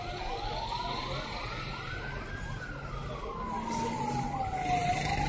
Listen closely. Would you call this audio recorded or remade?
recorded